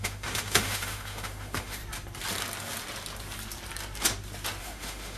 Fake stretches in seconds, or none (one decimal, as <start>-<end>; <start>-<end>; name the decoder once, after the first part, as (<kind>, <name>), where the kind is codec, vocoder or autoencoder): 0.0-1.8 (autoencoder, DAC-VAE); 4.6-5.2